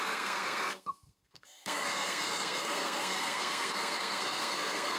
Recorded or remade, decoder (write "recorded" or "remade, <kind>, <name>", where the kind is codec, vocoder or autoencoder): remade, codec, SNAC